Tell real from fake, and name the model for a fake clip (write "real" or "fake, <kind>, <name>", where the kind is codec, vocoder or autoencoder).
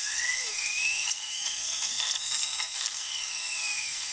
fake, codec, SNAC